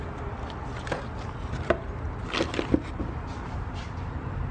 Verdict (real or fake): real